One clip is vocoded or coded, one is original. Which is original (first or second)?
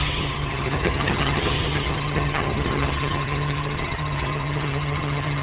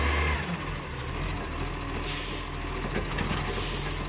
second